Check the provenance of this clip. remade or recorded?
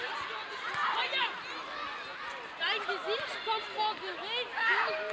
recorded